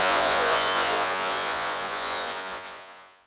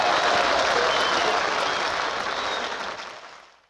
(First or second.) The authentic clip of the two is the second